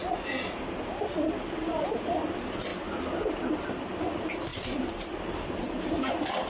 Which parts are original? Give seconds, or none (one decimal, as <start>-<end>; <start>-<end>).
0.0-6.5